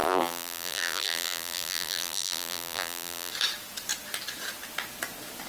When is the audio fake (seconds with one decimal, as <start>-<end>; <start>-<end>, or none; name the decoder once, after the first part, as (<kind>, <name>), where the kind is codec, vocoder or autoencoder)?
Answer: 0.0-3.3 (vocoder, BigVGAN v2)